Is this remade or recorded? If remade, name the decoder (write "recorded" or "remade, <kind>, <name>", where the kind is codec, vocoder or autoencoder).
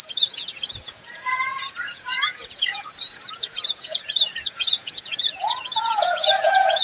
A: remade, vocoder, Vocos